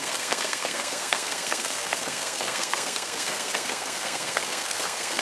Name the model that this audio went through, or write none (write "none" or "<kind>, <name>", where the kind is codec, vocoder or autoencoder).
codec, SNAC